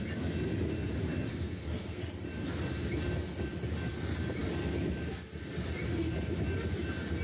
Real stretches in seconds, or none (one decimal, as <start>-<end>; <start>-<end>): 0.0-1.3; 2.0-7.2